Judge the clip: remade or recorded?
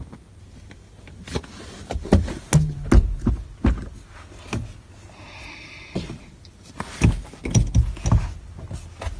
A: recorded